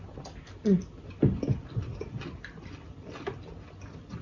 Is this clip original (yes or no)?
yes